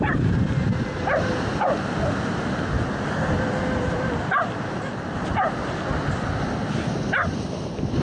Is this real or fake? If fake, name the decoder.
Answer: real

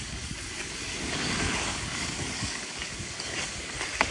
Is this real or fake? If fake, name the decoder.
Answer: fake, codec, DAC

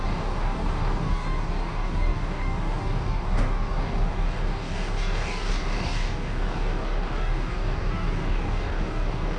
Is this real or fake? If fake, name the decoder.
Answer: fake, codec, DAC